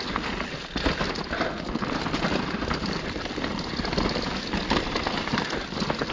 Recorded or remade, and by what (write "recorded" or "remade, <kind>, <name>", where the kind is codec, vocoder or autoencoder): recorded